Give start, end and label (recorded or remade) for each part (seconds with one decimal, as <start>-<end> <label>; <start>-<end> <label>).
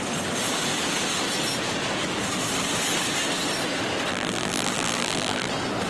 0.0-4.1 recorded; 4.1-5.5 remade; 5.5-5.9 recorded